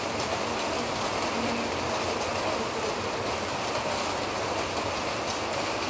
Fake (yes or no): no